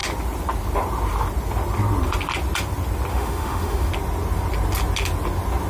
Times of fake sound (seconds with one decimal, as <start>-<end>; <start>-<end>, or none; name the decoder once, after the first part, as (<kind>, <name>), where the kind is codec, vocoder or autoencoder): 3.1-3.9 (autoencoder, DAC-VAE)